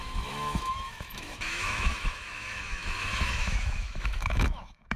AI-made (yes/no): yes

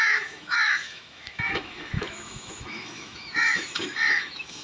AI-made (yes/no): yes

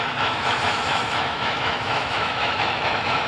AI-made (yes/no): yes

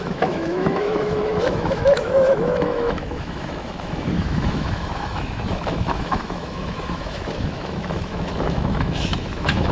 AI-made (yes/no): yes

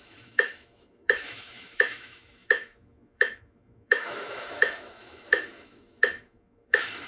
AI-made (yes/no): yes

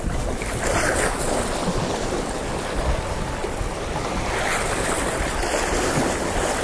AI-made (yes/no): no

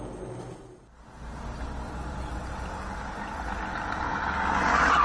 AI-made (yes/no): no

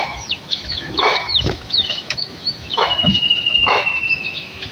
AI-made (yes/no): yes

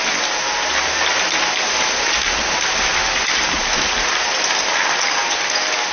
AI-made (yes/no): no